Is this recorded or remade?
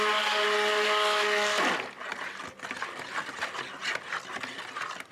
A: recorded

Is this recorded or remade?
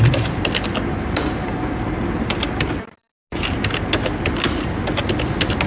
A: recorded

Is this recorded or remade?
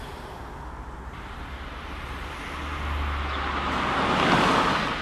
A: recorded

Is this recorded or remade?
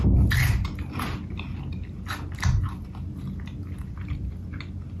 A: recorded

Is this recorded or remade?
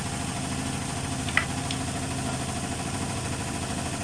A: recorded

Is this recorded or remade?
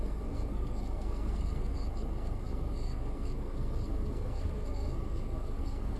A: remade